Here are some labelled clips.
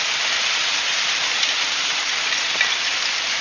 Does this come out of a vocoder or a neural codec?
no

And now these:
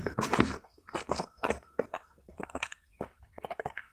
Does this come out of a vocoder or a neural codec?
yes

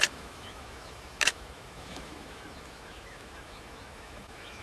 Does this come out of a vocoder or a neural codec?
yes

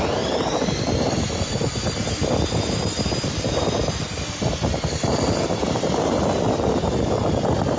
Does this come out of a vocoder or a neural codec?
no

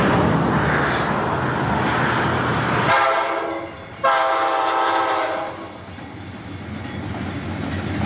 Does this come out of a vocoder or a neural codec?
no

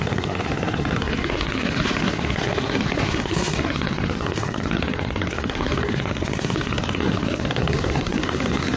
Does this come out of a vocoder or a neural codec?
yes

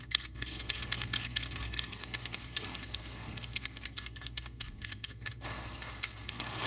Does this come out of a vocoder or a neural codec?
yes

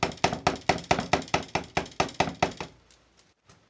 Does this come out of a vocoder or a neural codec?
no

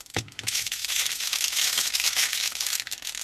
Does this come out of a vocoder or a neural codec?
yes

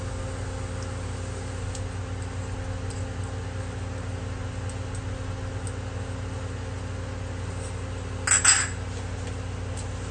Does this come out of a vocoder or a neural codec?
no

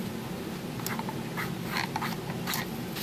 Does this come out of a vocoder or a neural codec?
no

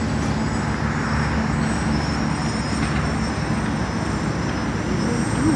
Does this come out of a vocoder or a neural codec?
no